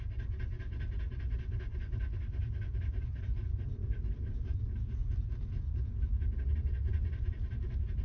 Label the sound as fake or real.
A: real